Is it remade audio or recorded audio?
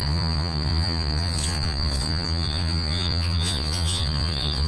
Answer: remade